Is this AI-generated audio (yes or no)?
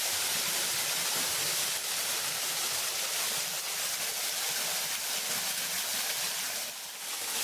no